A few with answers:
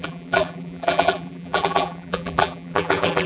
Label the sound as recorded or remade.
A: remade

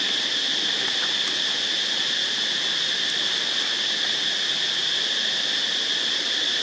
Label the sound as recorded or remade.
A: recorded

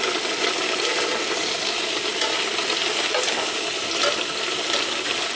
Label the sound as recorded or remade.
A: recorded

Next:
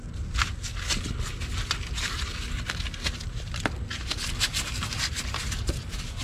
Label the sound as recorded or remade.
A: recorded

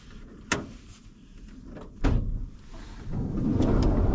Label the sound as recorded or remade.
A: recorded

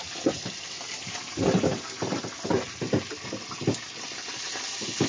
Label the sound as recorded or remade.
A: recorded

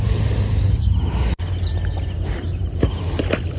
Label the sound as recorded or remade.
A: recorded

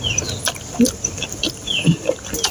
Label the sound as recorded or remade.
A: remade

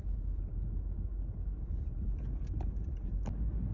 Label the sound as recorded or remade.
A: recorded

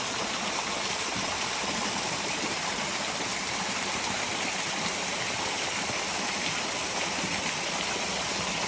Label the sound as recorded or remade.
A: recorded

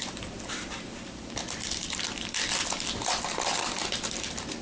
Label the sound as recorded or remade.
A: remade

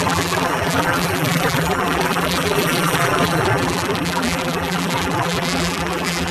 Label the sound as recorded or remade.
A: remade